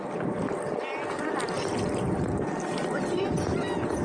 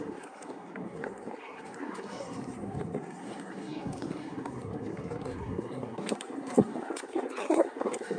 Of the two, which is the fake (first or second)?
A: second